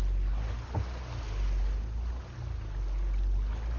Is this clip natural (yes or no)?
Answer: yes